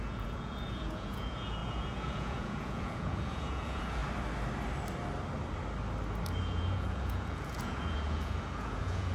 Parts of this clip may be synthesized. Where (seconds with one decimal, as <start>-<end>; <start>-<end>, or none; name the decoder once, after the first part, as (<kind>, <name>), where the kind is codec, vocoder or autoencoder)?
0.0-4.0 (vocoder, Vocos); 6.4-9.1